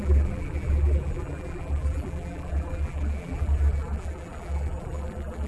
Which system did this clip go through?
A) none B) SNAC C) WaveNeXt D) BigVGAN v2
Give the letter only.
D